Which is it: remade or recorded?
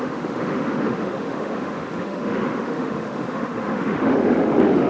remade